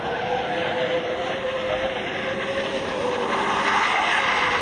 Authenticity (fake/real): real